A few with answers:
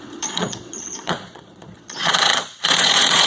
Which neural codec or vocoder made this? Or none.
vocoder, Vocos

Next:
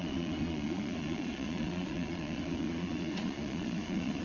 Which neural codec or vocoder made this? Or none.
vocoder, Vocos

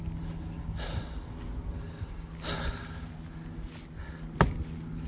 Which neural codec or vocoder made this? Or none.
none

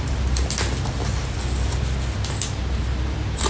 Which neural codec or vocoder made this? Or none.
none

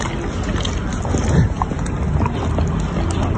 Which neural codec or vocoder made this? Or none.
none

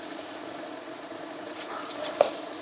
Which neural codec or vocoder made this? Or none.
vocoder, Vocos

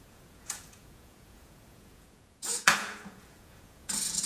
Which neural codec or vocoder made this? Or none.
vocoder, Vocos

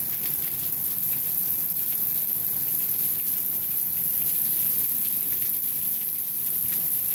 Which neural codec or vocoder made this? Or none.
none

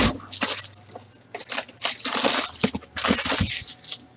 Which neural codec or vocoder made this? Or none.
none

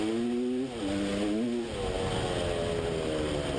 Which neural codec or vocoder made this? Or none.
none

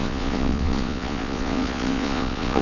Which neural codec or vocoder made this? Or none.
vocoder, Vocos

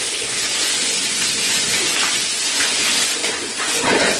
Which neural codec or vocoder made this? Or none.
vocoder, Vocos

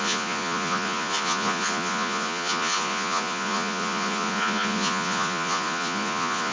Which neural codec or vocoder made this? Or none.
vocoder, Vocos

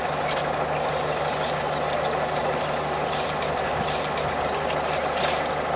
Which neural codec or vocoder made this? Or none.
none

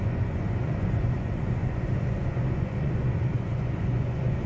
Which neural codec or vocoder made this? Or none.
vocoder, Vocos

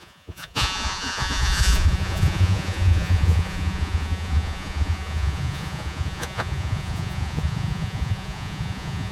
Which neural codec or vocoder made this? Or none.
vocoder, Vocos